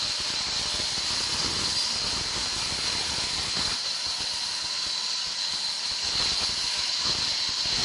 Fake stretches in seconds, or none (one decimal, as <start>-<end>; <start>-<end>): 6.7-7.2